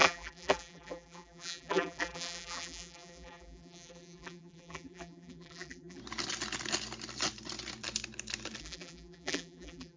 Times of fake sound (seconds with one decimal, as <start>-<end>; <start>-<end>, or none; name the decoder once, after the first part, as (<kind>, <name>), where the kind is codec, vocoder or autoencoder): 0.0-6.0 (vocoder, BigVGAN v2); 8.6-10.0